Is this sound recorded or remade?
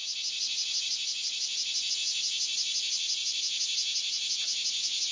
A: recorded